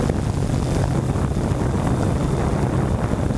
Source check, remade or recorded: recorded